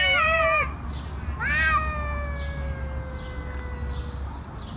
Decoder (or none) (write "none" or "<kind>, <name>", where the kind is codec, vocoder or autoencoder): none